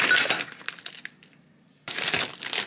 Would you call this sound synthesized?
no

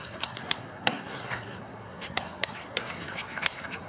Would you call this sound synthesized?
yes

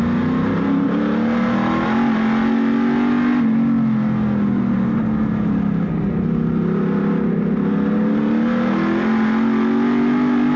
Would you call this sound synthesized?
no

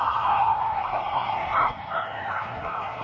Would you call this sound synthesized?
yes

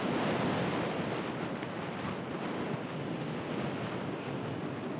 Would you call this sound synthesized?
no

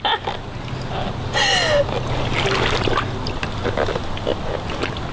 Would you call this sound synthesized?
no